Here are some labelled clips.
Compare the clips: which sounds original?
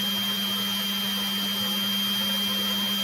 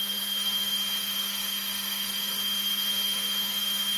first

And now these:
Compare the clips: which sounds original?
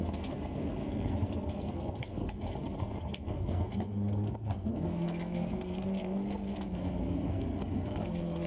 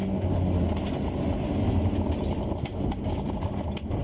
second